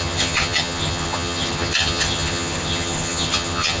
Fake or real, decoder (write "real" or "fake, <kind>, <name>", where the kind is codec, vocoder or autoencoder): fake, vocoder, HiFi-GAN